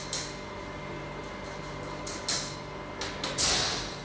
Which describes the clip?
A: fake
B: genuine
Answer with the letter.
B